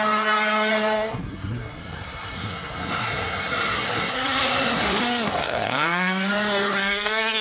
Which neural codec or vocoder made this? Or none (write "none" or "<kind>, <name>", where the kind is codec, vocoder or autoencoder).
codec, SNAC